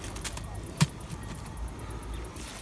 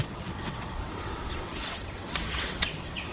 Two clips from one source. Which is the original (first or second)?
first